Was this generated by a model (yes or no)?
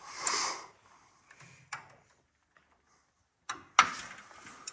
no